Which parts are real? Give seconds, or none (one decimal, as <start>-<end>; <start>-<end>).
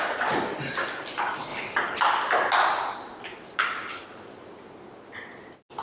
0.0-5.8